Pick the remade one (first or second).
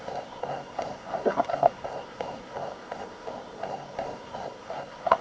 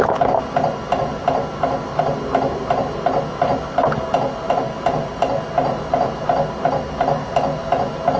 first